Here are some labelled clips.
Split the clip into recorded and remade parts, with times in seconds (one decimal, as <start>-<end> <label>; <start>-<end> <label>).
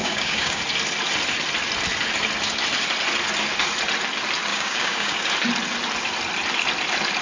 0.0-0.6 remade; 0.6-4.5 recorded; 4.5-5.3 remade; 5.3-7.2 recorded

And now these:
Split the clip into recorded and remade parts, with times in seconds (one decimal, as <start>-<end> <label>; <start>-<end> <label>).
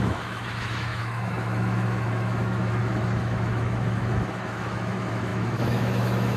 0.0-6.4 remade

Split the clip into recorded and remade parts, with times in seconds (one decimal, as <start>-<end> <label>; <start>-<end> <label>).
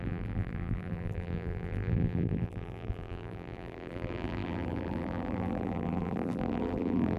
0.0-7.2 remade